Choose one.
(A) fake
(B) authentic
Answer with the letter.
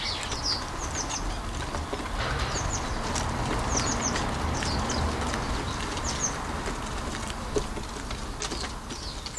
B